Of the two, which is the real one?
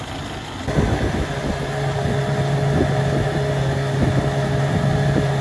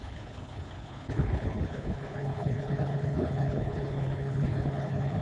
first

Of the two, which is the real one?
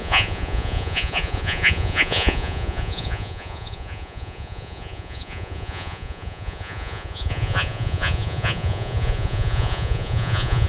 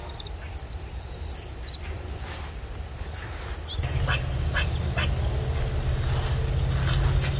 second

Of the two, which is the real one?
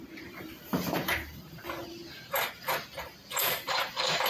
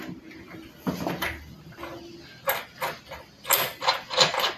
second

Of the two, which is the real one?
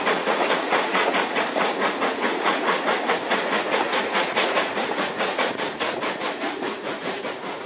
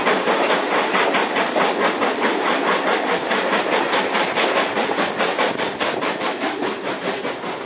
second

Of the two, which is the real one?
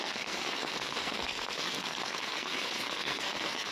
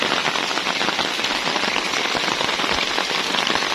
second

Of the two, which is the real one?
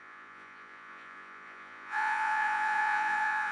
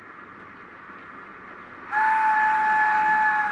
second